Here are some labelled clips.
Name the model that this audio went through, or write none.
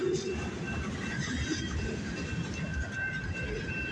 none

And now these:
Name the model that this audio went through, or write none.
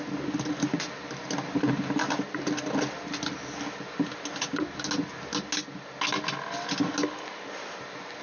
none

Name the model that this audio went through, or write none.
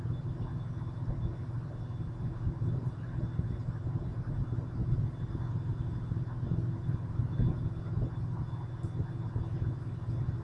none